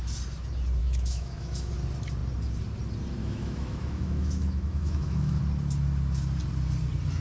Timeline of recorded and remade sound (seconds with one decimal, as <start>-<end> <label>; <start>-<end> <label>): 0.0-0.8 recorded; 0.8-1.7 remade; 1.7-3.2 recorded; 3.2-5.4 remade; 5.4-7.2 recorded